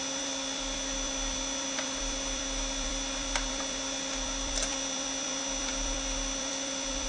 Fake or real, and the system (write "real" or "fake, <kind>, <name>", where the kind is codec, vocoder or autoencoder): fake, vocoder, BigVGAN v2